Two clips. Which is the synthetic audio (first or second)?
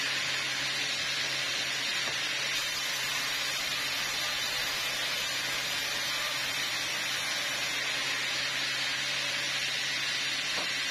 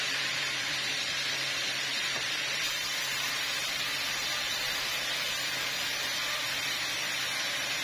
second